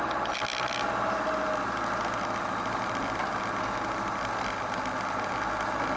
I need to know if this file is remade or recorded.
recorded